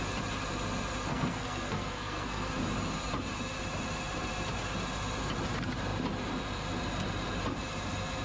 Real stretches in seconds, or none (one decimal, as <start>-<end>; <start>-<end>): 0.0-1.1; 2.5-8.2